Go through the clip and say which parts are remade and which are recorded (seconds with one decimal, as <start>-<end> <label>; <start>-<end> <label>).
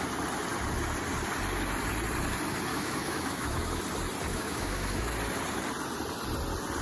0.0-2.7 recorded; 2.7-3.8 remade; 3.8-4.3 recorded; 4.3-5.1 remade; 5.1-6.8 recorded